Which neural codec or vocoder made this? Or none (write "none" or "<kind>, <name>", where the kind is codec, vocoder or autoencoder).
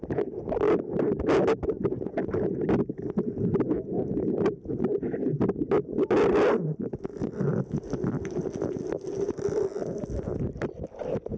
none